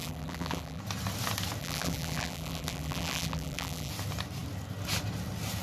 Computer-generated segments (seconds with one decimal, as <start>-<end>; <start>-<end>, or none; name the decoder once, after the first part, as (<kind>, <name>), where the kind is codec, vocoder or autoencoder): 0.0-0.8 (vocoder, BigVGAN v2); 1.6-3.9